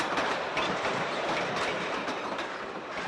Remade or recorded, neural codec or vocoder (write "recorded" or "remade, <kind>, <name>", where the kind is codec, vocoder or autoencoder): recorded